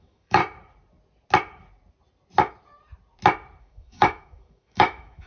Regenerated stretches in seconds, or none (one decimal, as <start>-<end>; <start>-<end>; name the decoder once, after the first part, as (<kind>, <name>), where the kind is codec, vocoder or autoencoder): 0.0-0.4 (autoencoder, DAC-VAE); 3.6-5.3